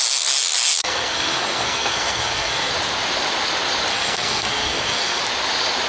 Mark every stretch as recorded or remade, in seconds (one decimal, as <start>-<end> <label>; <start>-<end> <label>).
0.0-0.7 recorded; 0.7-2.7 remade; 2.7-3.9 recorded; 3.9-5.2 remade; 5.2-5.9 recorded